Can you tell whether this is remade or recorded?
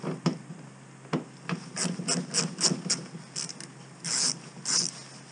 recorded